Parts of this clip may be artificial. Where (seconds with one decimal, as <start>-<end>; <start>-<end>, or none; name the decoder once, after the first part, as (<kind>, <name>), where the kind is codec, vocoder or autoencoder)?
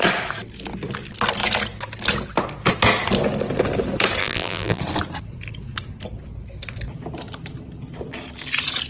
4.2-4.8 (vocoder, BigVGAN v2)